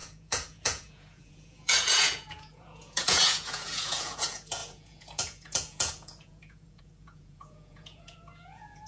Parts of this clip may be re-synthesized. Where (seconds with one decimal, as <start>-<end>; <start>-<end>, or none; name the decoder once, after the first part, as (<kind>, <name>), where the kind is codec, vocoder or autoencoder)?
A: 0.0-8.9 (vocoder, Vocos)